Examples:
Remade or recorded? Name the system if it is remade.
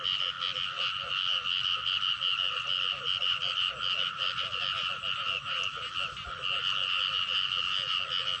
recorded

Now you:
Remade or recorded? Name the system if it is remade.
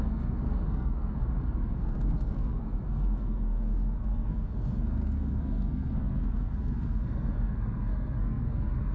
remade, codec, SNAC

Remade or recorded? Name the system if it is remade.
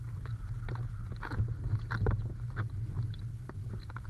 recorded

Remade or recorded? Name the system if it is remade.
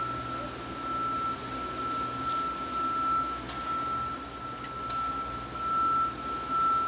recorded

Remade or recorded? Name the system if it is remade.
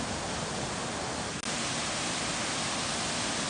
recorded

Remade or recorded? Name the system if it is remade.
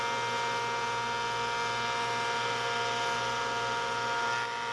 recorded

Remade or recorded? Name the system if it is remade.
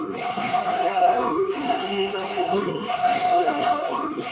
remade, codec, SNAC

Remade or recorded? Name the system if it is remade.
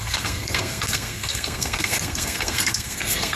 remade, codec, SNAC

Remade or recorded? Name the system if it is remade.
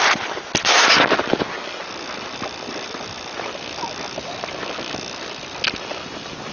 recorded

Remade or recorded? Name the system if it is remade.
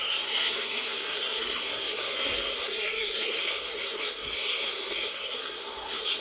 remade, codec, SNAC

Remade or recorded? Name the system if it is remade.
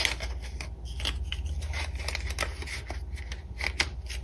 recorded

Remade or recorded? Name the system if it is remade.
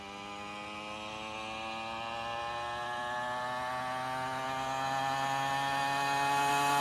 recorded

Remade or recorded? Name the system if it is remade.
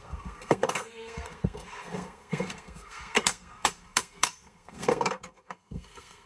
remade, codec, SNAC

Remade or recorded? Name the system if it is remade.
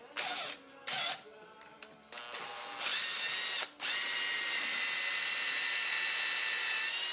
recorded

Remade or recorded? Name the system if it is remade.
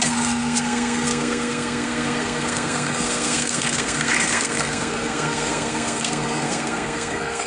remade, codec, SNAC